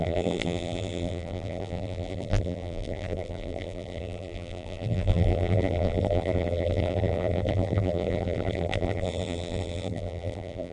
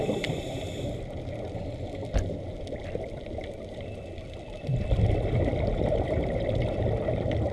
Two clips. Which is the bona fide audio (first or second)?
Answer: second